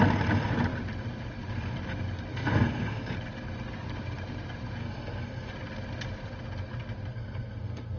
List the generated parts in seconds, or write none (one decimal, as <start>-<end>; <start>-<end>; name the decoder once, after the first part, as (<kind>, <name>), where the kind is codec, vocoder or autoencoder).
2.3-3.1 (codec, SNAC); 4.8-5.5; 7.1-8.0